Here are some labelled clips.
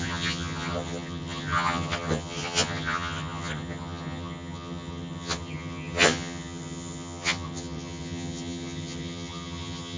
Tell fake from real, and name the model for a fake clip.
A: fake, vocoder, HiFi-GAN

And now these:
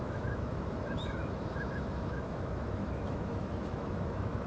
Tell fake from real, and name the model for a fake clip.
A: fake, autoencoder, DAC-VAE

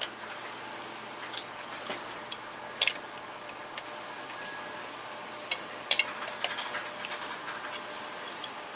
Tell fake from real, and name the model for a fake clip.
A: real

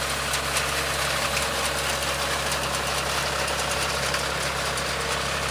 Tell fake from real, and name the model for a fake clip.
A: real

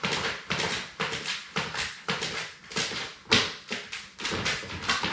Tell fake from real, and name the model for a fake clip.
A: real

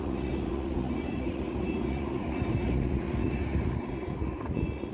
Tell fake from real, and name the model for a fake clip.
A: fake, vocoder, Vocos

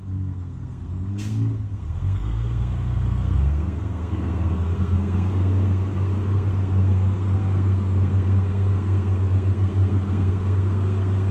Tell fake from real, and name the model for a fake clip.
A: fake, codec, SNAC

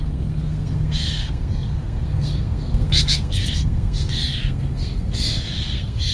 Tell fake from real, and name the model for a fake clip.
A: fake, codec, SNAC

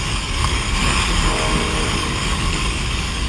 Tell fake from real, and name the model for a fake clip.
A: fake, codec, DAC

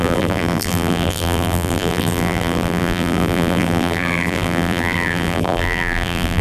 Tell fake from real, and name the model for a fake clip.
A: fake, vocoder, BigVGAN v2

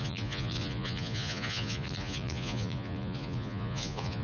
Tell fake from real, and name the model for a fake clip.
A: fake, vocoder, Vocos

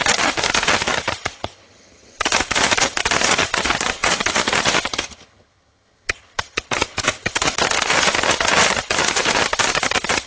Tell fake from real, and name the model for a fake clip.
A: fake, vocoder, HiFi-GAN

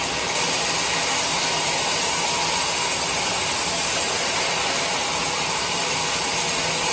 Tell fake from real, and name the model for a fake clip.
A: real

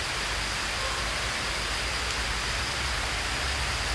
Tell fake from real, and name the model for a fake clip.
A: real